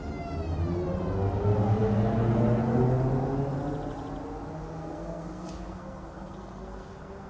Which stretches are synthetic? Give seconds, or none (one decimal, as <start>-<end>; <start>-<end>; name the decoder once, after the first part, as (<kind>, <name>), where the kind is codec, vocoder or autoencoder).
4.8-7.3 (codec, SNAC)